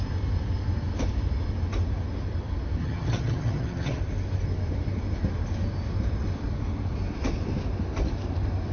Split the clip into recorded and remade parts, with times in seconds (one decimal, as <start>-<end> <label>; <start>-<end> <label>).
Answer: 0.0-2.8 recorded; 2.8-4.0 remade; 4.0-8.7 recorded